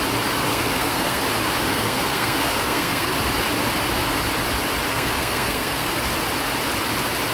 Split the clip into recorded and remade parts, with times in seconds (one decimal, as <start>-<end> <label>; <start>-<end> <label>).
0.0-0.5 recorded; 0.5-1.2 remade; 1.2-1.7 recorded; 1.7-3.1 remade; 3.1-4.9 recorded; 4.9-5.9 remade; 5.9-7.3 recorded